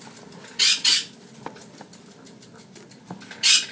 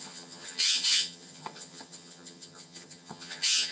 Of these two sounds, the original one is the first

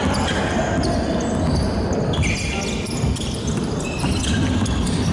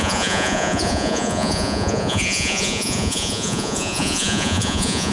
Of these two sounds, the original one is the first